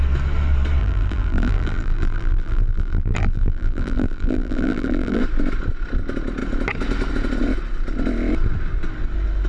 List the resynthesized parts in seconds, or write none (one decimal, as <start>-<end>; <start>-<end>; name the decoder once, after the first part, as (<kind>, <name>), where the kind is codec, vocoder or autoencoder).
0.8-5.2 (vocoder, BigVGAN v2)